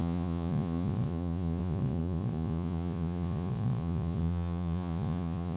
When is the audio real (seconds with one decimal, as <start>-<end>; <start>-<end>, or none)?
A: none